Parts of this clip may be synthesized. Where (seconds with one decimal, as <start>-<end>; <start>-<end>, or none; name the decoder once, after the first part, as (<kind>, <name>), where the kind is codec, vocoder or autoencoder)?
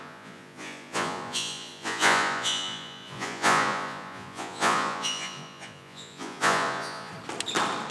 0.0-7.1 (vocoder, Vocos)